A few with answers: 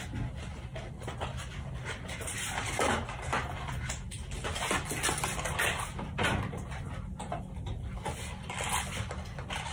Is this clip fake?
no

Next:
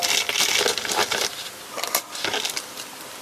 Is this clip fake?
no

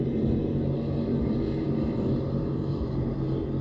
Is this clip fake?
yes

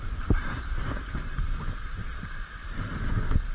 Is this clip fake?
yes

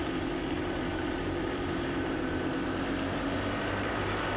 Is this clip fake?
yes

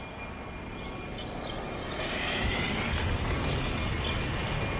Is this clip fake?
no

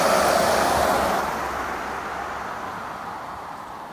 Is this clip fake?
yes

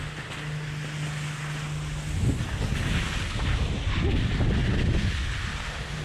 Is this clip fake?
no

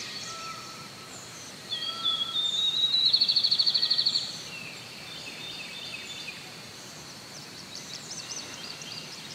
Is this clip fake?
yes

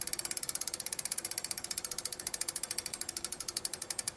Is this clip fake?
no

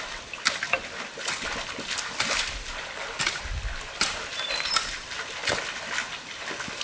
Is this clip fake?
no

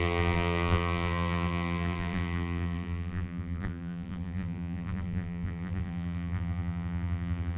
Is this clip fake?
yes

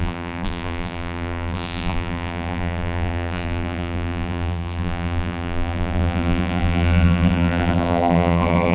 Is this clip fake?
yes